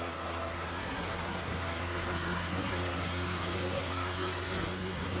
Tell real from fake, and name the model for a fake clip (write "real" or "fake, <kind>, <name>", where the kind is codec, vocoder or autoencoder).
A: fake, codec, SNAC